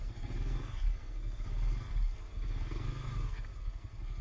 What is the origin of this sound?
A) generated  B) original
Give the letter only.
A